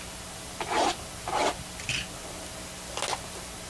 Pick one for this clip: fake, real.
real